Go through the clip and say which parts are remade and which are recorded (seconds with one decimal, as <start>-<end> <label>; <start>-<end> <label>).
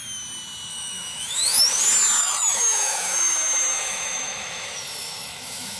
0.0-0.7 recorded; 0.7-1.8 remade; 1.8-2.2 recorded; 2.2-5.8 remade